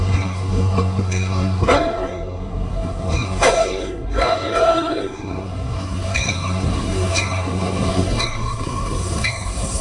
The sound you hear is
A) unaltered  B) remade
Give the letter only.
B